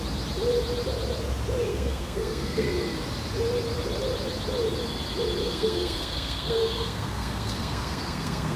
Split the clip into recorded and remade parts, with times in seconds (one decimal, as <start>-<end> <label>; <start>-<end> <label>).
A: 0.0-1.7 recorded; 1.7-2.7 remade; 2.7-5.4 recorded; 5.4-8.6 remade